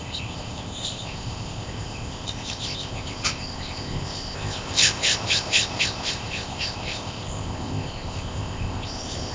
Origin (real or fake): fake